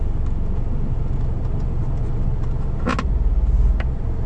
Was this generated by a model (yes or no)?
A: no